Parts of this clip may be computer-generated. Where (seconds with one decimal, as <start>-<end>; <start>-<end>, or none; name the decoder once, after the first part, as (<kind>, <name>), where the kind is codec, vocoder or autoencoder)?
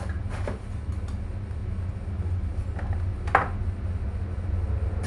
none